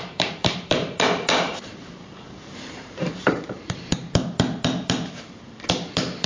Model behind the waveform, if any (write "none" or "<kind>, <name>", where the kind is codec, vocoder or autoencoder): vocoder, BigVGAN v2